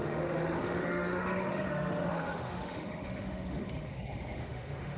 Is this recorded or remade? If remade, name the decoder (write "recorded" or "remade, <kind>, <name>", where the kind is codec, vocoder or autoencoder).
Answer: remade, autoencoder, DAC-VAE